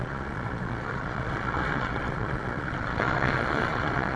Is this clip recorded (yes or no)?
no